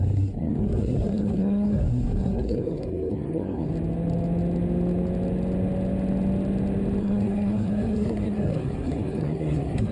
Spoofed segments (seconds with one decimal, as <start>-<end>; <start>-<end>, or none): 0.0-3.7; 7.0-9.9